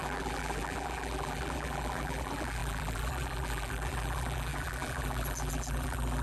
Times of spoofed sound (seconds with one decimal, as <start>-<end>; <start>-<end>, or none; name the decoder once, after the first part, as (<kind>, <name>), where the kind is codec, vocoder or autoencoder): 0.0-6.2 (vocoder, BigVGAN v2)